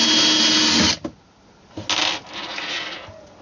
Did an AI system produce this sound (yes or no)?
no